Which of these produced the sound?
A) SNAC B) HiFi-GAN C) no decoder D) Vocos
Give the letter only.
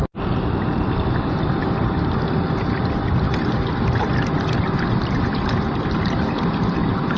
C